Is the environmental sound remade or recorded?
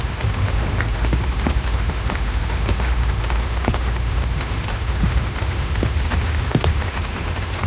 remade